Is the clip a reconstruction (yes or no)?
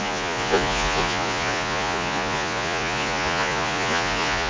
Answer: yes